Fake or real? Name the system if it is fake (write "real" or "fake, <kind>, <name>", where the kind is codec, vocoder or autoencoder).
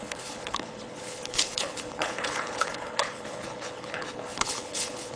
fake, codec, HILCodec